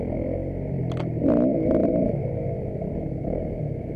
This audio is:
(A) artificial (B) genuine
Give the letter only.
B